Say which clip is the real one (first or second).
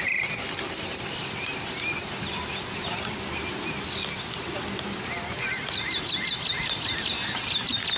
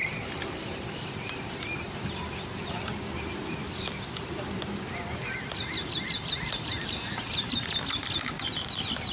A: first